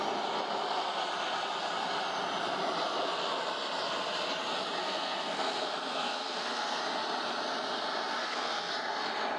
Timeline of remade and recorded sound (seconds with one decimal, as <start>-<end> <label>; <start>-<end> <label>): 0.0-4.8 recorded; 4.8-6.8 remade; 6.8-8.2 recorded; 8.2-8.7 remade; 8.7-9.4 recorded